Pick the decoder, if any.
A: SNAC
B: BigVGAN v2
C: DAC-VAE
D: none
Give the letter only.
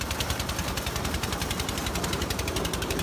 B